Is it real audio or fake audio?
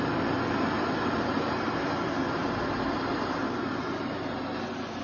real